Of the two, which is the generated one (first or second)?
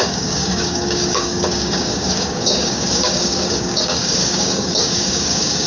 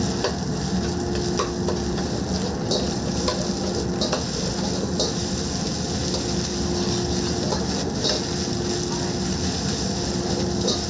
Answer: first